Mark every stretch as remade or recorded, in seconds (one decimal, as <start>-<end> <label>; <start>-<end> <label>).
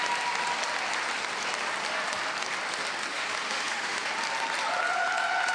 0.0-3.1 recorded; 3.1-4.1 remade; 4.1-5.5 recorded